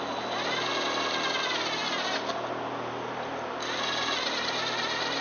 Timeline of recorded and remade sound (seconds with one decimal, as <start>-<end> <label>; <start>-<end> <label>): 0.0-5.2 recorded